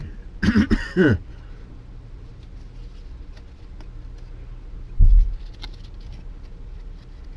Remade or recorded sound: recorded